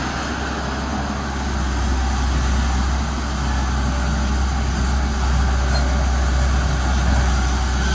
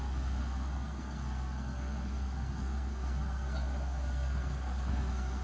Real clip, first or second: first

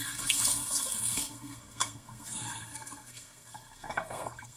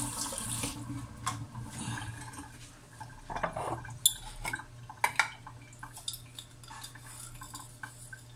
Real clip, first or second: second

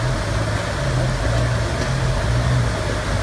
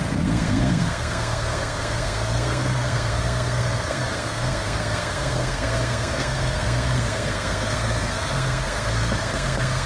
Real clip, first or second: first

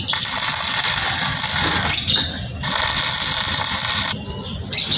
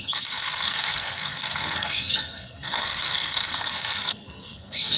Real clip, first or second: first